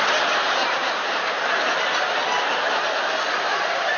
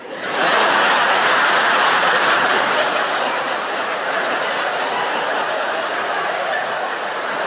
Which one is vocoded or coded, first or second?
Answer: second